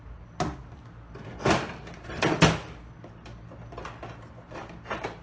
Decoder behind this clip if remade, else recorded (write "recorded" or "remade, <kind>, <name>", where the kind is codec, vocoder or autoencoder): recorded